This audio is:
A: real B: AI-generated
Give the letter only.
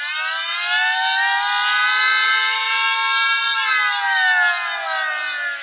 A